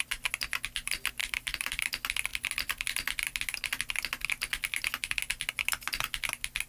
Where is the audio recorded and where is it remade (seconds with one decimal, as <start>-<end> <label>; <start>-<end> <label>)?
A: 0.0-1.2 recorded; 1.2-1.8 remade; 1.8-6.7 recorded